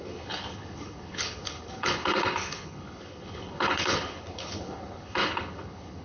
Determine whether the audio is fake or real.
fake